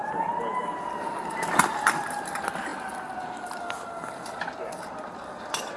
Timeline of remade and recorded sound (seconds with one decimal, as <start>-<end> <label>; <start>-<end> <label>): 0.0-5.8 recorded